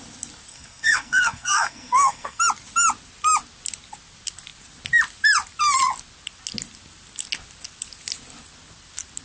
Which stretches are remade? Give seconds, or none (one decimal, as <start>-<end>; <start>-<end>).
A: 0.5-2.4